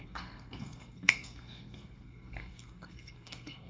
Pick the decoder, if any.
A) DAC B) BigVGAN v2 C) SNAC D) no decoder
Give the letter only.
C